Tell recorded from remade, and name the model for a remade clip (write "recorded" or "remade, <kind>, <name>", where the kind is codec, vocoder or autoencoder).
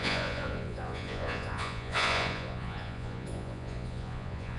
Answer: remade, vocoder, Vocos